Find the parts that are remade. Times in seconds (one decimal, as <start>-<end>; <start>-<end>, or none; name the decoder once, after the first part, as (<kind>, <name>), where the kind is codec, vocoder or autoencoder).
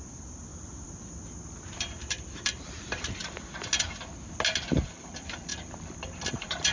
0.0-0.5 (vocoder, BigVGAN v2); 2.1-3.2; 4.9-5.5; 6.3-6.7